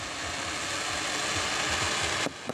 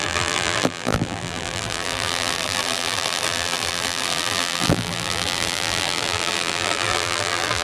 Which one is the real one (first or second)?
first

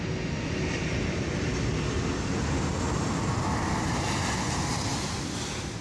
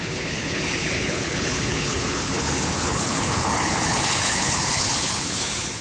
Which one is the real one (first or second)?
first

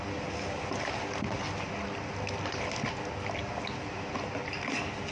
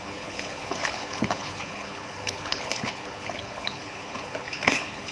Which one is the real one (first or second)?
first